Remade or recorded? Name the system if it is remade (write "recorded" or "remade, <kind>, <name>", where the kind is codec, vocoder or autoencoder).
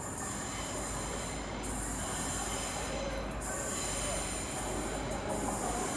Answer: recorded